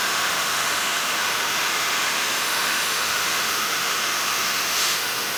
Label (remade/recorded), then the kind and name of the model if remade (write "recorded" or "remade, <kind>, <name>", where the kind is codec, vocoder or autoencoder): remade, autoencoder, DAC-VAE